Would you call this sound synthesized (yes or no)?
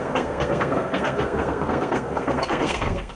yes